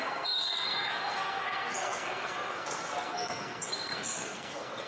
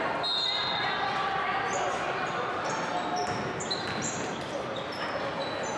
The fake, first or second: first